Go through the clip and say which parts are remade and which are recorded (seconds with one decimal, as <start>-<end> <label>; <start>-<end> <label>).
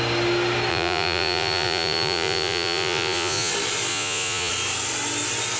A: 0.0-0.7 recorded; 0.7-3.5 remade; 3.5-3.9 recorded; 3.9-4.5 remade; 4.5-5.6 recorded